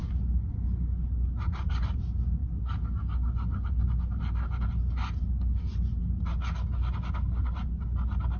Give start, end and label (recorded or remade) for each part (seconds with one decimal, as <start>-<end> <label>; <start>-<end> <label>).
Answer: 0.0-8.4 recorded